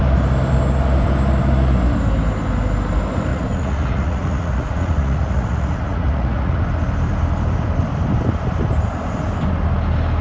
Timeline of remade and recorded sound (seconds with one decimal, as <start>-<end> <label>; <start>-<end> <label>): 0.0-3.3 recorded; 3.3-6.6 remade; 6.6-10.2 recorded

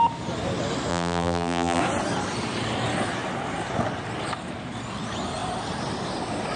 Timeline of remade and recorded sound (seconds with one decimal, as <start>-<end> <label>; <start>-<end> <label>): 0.0-0.9 recorded; 0.9-1.8 remade; 1.8-6.6 recorded

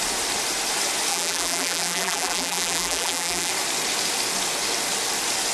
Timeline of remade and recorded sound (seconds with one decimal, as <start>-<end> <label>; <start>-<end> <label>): 0.0-1.1 recorded; 1.1-3.5 remade; 3.5-5.5 recorded